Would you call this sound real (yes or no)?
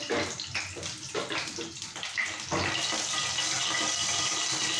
yes